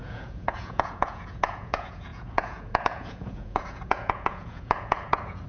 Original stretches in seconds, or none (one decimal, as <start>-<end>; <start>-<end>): none